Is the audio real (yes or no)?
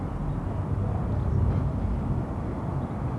yes